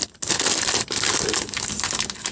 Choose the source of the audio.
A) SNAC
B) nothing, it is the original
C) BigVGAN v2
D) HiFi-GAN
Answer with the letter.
B